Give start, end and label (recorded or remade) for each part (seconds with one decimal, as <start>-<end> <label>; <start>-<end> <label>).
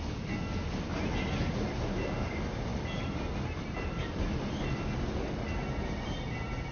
0.0-6.7 recorded